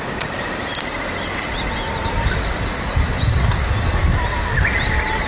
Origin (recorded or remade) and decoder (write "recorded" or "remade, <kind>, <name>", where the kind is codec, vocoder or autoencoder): recorded